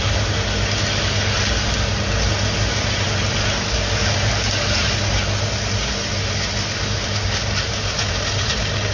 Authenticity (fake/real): real